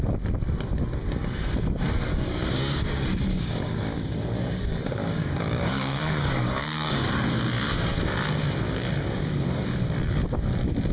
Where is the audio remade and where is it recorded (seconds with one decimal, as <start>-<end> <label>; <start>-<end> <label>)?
0.0-2.1 recorded; 2.1-7.1 remade; 7.1-10.9 recorded